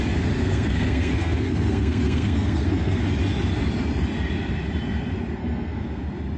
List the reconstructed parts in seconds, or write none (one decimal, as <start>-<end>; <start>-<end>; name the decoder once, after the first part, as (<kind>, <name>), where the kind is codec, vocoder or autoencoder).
0.4-3.0 (codec, SNAC); 5.4-6.0